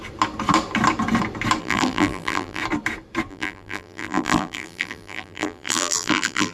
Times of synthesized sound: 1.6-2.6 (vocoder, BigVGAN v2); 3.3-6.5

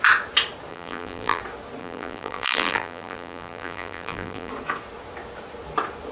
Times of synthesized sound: 0.7-1.4 (vocoder, BigVGAN v2); 1.8-4.5

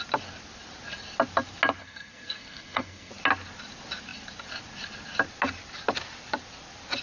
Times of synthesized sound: 1.8-3.1 (codec, SNAC)

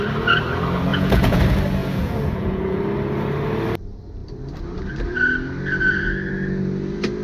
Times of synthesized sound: 0.9-1.4 (vocoder, Vocos); 1.8-2.8

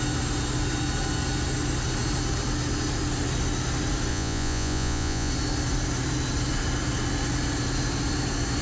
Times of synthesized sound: 4.1-5.3 (vocoder, Vocos)